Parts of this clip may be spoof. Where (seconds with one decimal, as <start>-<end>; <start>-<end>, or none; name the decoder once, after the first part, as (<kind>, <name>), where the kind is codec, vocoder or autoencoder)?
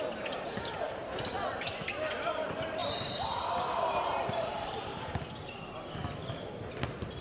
2.8-5.3 (vocoder, BigVGAN v2)